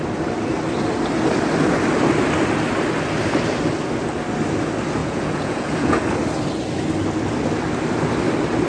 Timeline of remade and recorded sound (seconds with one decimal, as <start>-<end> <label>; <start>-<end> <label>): 0.0-5.0 recorded; 5.0-6.0 remade; 6.0-8.7 recorded